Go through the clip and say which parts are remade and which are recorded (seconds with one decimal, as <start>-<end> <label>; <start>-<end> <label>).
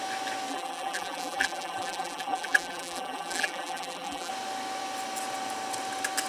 0.0-0.5 recorded; 0.5-4.3 remade; 4.3-6.3 recorded